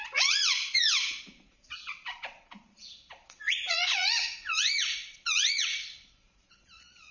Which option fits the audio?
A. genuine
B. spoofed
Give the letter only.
B